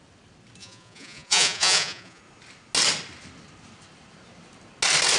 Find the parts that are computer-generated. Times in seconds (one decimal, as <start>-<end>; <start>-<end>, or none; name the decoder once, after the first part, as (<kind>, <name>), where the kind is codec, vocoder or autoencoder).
0.6-2.2 (vocoder, Vocos)